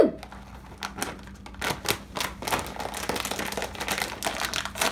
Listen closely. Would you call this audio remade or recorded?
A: recorded